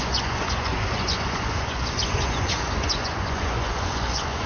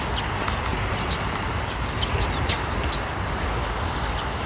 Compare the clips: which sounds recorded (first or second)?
second